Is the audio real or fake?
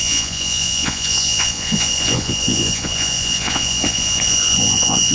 fake